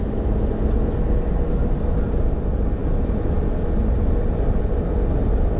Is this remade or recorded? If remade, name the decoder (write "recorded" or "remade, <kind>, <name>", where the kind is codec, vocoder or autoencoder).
recorded